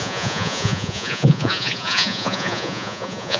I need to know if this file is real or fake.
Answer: fake